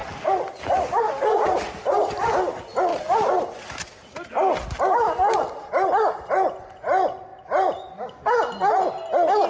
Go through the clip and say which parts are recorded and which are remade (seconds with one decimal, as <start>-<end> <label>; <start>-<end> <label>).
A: 0.0-9.5 recorded